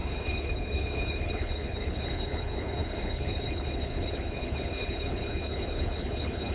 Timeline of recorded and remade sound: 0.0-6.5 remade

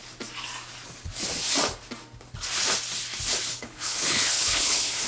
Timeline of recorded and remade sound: 0.0-3.5 recorded; 3.5-5.1 remade

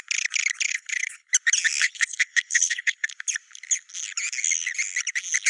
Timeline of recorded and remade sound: 0.0-0.7 recorded; 0.7-1.3 remade; 1.3-1.8 recorded; 1.8-3.1 remade; 3.1-5.5 recorded

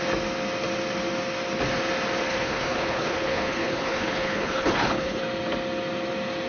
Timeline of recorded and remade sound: 0.0-2.3 recorded; 2.3-5.2 remade; 5.2-6.5 recorded

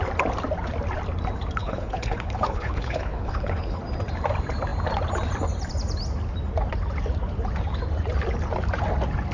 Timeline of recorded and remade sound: 0.0-1.6 recorded; 1.6-3.8 remade; 3.8-9.3 recorded